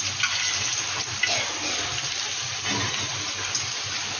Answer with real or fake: real